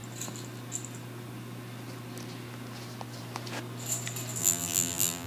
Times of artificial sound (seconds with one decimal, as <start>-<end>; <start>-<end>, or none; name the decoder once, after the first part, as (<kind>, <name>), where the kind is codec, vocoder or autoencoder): 4.4-5.3 (vocoder, BigVGAN v2)

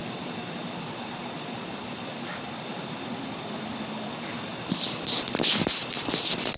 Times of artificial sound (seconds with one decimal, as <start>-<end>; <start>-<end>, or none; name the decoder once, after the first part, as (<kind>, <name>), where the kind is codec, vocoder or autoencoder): 0.0-2.6 (vocoder, BigVGAN v2); 4.5-5.2

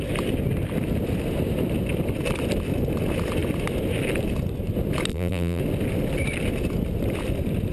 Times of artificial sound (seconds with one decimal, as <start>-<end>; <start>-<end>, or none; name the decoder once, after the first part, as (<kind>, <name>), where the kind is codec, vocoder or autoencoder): 5.1-5.6 (vocoder, BigVGAN v2)

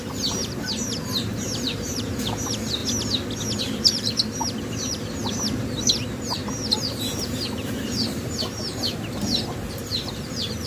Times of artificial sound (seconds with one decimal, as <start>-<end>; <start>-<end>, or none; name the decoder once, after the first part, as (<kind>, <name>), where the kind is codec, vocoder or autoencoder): 0.0-2.8 (vocoder, BigVGAN v2); 3.6-10.7

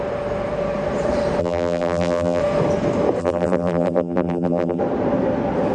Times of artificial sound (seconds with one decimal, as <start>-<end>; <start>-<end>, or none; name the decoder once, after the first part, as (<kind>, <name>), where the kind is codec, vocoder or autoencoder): 1.4-2.4 (vocoder, BigVGAN v2); 3.2-4.8